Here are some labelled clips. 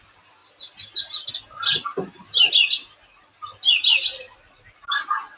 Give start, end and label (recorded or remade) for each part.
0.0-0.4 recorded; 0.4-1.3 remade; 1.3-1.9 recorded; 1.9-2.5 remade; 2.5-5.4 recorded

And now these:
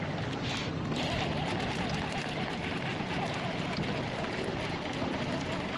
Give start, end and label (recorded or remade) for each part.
0.0-2.9 remade; 2.9-5.2 recorded; 5.2-5.8 remade

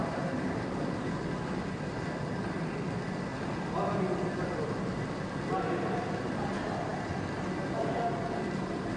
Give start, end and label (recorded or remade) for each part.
0.0-9.0 recorded

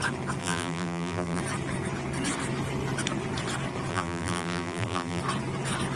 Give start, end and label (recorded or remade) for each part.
0.0-0.4 recorded; 0.4-1.4 remade; 1.4-3.9 recorded; 3.9-5.2 remade; 5.2-6.0 recorded

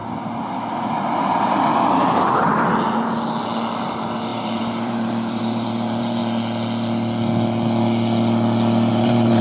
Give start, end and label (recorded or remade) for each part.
0.0-3.8 recorded; 3.8-6.2 remade; 6.2-8.9 recorded; 8.9-9.4 remade

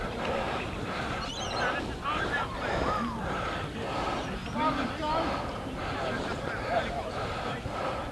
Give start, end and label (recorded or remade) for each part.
0.0-1.3 remade; 1.3-2.2 recorded; 2.2-8.1 remade

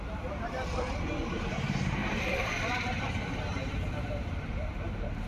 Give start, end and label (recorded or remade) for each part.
0.0-5.3 remade